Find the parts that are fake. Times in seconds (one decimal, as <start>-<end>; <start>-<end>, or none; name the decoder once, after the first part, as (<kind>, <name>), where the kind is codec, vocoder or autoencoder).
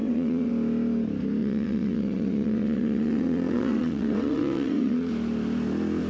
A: 0.0-0.5 (vocoder, WaveNeXt); 1.4-5.1